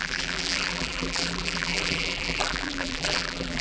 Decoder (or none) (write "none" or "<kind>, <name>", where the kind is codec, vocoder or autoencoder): vocoder, BigVGAN v2